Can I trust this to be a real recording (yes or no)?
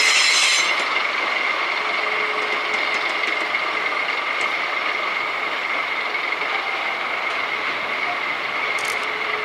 yes